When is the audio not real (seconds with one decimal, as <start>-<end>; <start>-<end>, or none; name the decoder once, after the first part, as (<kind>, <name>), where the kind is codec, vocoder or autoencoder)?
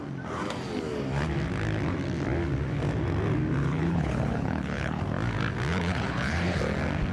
3.6-5.0 (codec, HILCodec); 5.7-6.6